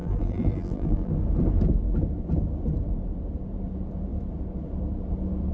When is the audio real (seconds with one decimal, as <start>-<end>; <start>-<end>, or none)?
1.1-5.5